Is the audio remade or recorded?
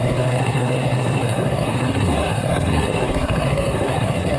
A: remade